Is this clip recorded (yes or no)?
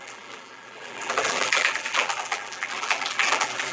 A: no